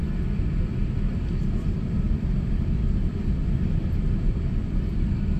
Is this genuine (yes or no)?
no